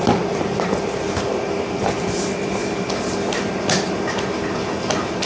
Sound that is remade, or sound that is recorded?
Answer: recorded